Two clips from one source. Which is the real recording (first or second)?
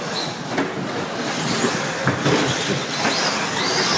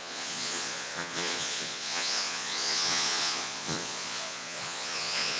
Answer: first